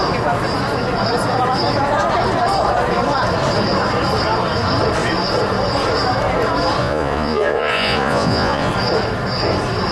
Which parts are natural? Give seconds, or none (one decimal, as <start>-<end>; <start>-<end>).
0.0-6.8; 8.7-9.9